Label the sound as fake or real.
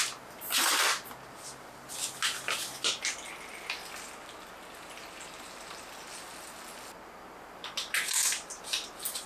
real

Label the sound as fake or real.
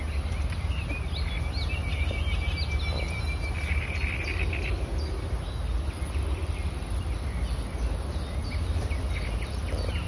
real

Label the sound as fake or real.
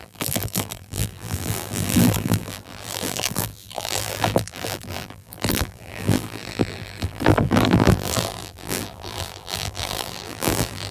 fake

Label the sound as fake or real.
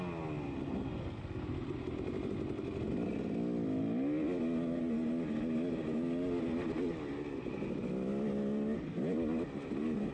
real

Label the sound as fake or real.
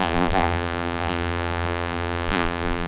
fake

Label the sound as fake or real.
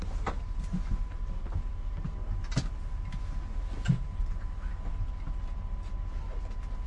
real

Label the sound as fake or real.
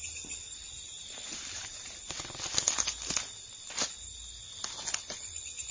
real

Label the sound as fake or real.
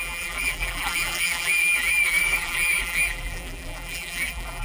fake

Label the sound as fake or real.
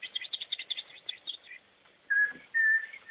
real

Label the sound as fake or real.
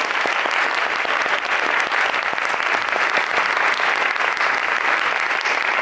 real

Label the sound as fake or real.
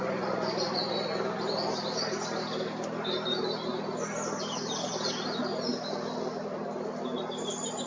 real